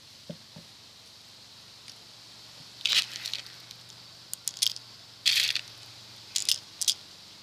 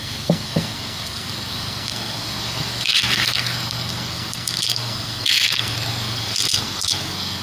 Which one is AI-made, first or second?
second